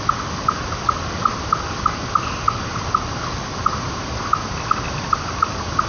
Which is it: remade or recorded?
recorded